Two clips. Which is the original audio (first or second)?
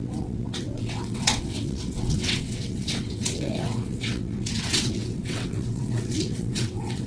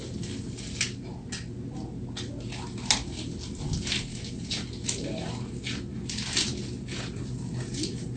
second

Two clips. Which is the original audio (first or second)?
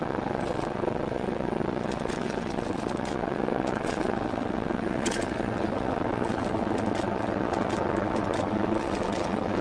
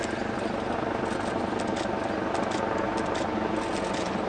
second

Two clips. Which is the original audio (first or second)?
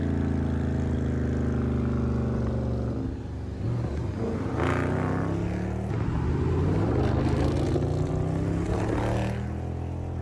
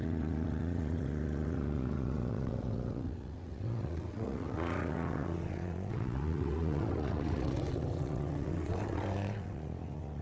first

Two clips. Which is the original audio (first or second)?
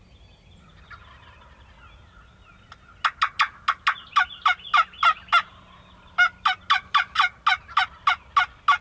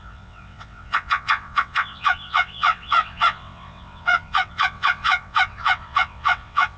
first